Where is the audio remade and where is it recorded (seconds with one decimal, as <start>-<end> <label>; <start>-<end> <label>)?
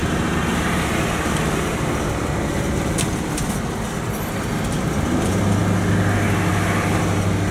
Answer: 0.0-7.5 recorded